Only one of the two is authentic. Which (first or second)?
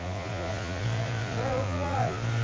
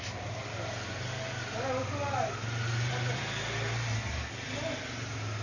second